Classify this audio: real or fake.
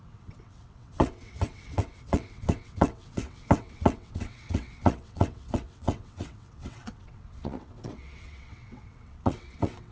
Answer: fake